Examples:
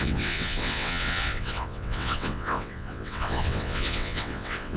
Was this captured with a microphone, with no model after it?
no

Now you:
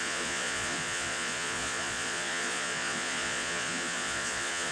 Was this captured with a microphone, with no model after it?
no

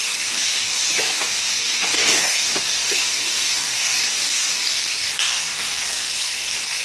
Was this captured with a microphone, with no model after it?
no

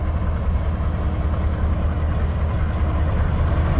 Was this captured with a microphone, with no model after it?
yes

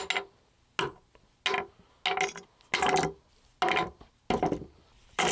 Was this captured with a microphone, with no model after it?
yes